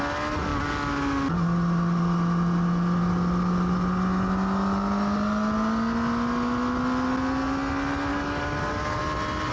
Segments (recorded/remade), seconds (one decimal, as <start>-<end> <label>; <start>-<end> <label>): 0.0-8.1 recorded; 8.1-9.0 remade; 9.0-9.5 recorded